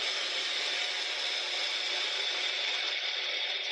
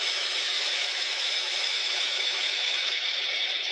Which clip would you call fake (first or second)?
second